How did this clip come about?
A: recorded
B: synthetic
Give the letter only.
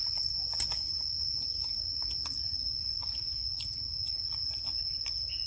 A